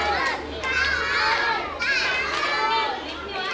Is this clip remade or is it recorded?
recorded